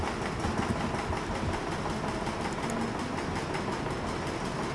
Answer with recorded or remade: recorded